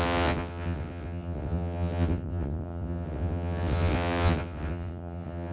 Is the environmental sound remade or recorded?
remade